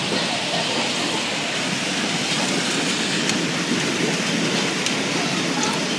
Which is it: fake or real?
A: real